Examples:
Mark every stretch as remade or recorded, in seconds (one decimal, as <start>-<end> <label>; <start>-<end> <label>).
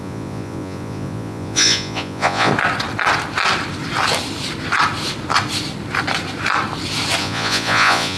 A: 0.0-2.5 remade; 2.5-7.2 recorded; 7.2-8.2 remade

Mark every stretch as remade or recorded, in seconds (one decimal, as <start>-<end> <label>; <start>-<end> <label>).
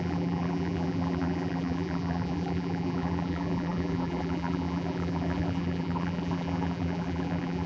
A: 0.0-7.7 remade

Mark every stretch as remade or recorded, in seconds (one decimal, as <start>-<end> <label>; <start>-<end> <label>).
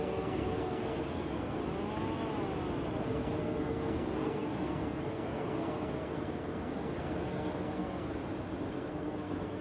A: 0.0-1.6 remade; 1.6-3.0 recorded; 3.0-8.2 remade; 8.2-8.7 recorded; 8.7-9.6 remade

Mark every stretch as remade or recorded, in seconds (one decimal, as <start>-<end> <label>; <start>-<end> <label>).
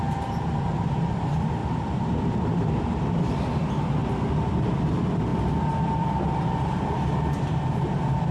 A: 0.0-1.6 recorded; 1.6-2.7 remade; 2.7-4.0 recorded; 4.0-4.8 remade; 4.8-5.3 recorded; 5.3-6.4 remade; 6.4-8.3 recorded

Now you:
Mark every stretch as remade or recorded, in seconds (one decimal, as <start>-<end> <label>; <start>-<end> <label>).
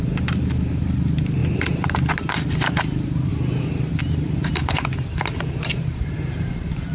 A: 0.0-1.4 remade; 1.4-2.3 recorded; 2.3-3.3 remade; 3.3-4.0 recorded; 4.0-6.9 remade